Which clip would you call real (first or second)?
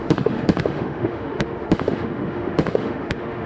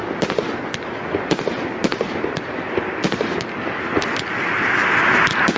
second